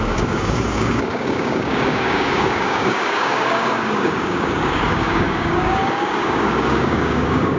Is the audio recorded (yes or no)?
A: no